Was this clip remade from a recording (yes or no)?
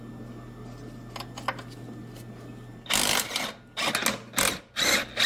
no